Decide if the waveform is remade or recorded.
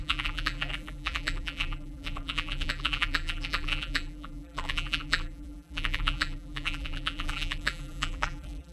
remade